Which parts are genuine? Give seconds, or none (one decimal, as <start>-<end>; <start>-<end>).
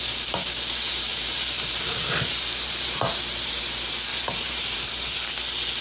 0.0-1.1; 3.6-4.1; 5.3-5.8